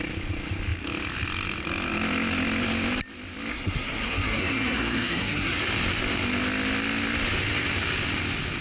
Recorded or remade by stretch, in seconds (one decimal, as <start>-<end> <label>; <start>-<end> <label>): 0.0-3.5 recorded; 3.5-5.6 remade; 5.6-8.6 recorded